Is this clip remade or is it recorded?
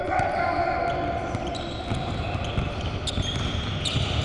recorded